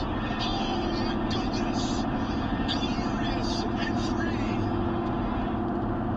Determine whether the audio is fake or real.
real